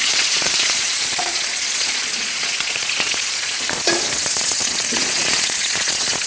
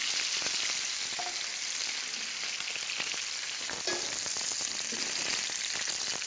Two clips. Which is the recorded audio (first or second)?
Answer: second